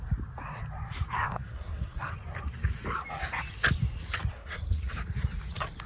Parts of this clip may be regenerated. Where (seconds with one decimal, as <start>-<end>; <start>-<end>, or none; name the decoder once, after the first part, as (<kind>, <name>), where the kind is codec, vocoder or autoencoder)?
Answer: 1.2-2.1 (codec, SNAC); 4.3-4.9